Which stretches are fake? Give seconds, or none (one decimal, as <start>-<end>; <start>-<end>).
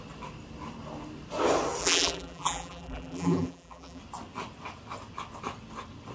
1.8-4.0